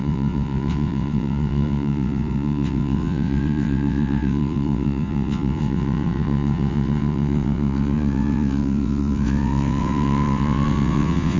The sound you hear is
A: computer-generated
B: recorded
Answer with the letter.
A